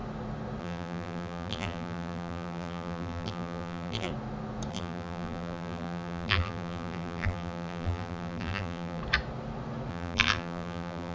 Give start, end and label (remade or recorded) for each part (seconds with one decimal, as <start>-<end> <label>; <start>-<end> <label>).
0.0-0.6 recorded; 0.6-4.1 remade; 4.1-4.7 recorded; 4.7-9.0 remade; 9.0-9.9 recorded; 9.9-11.1 remade